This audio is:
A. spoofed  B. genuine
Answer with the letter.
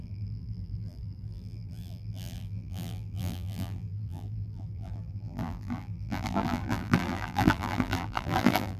A